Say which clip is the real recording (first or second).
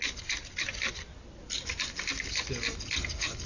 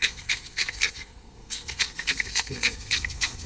first